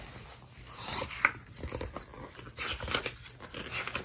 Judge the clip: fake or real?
real